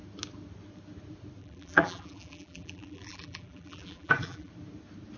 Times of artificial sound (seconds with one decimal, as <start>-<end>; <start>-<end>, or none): 1.4-4.5